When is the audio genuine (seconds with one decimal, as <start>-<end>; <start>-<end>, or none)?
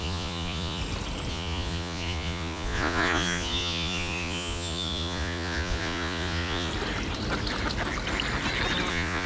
0.8-1.3; 6.7-8.9